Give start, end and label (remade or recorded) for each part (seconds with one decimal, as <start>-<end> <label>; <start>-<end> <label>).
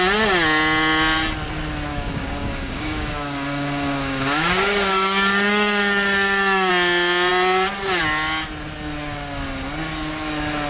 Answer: 0.0-1.9 recorded; 1.9-6.7 remade; 6.7-10.7 recorded